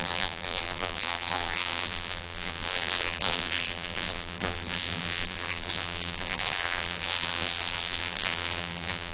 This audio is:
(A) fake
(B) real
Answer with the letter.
A